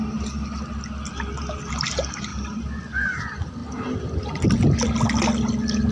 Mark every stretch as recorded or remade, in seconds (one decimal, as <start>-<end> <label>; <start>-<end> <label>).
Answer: 0.0-2.3 recorded; 2.3-3.2 remade; 3.2-5.9 recorded